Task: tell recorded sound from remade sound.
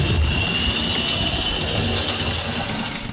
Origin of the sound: recorded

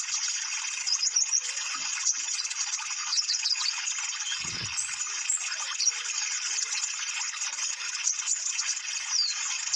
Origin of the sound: remade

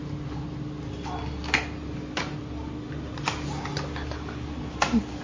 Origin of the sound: recorded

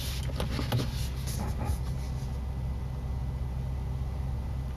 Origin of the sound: recorded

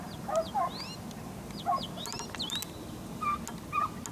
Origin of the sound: recorded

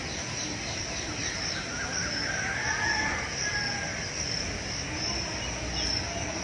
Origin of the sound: recorded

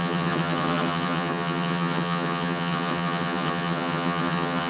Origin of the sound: remade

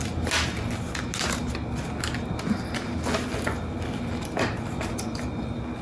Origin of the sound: recorded